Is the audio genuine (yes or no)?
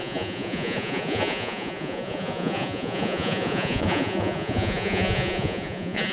no